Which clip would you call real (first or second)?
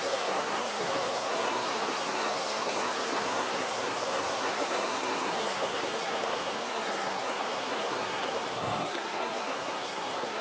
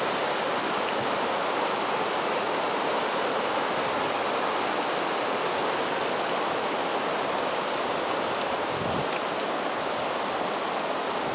second